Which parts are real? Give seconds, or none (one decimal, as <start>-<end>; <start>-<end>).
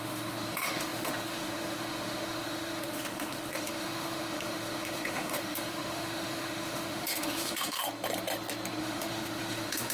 7.8-8.8